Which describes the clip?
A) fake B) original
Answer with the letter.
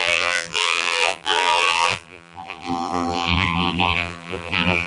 A